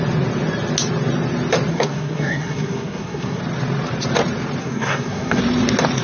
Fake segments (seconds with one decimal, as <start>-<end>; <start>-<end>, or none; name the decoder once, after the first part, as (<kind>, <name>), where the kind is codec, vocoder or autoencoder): 1.7-3.4 (codec, SNAC); 4.6-5.4